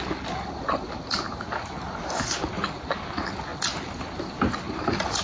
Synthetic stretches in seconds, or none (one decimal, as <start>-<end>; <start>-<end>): none